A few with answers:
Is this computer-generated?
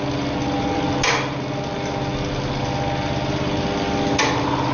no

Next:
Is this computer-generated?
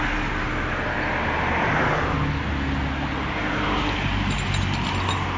no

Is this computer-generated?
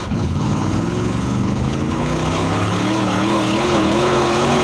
yes